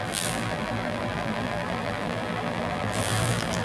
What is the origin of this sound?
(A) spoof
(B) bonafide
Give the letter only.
A